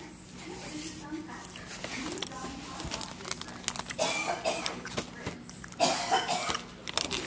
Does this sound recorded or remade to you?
recorded